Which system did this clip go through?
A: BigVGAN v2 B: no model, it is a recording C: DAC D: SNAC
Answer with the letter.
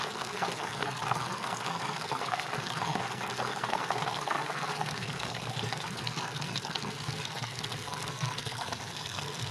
D